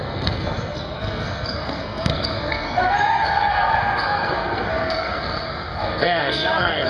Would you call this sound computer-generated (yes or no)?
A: yes